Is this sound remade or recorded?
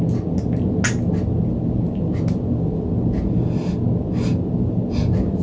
recorded